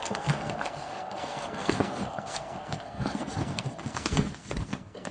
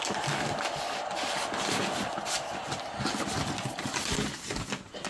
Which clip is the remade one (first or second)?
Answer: first